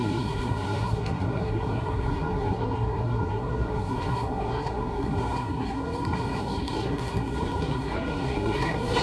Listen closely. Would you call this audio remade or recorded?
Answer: remade